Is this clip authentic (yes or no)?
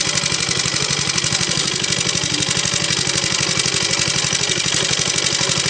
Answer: yes